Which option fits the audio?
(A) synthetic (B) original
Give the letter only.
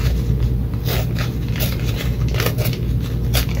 B